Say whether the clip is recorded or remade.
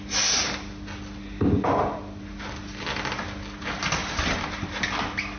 recorded